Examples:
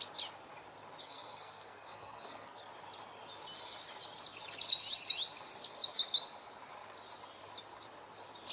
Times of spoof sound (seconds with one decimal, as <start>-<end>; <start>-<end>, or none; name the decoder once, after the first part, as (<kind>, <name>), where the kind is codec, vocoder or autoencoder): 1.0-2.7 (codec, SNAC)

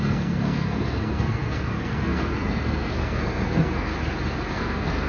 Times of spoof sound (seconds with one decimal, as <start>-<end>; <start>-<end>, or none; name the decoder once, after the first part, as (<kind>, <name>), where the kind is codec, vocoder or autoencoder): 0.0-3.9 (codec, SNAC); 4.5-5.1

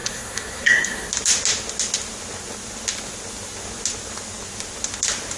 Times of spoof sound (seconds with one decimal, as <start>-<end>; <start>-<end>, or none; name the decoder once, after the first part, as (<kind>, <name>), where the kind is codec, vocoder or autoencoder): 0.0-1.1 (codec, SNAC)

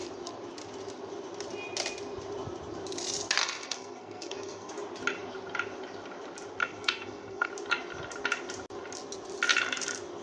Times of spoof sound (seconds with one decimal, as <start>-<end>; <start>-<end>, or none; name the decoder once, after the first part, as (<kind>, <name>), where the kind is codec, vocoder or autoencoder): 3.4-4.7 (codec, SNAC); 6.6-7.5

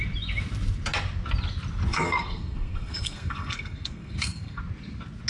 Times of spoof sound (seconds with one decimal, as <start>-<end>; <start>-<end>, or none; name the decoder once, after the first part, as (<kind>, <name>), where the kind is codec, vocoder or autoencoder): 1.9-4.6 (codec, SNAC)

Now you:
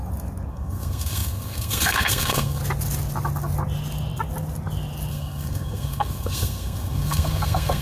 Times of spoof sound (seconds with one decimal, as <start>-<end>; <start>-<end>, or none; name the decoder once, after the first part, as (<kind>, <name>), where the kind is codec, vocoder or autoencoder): 0.5-2.6 (codec, SNAC); 5.1-7.8